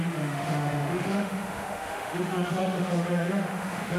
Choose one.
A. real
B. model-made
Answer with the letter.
B